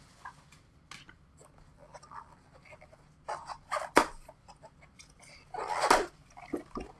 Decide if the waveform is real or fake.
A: real